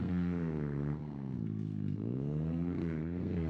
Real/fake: fake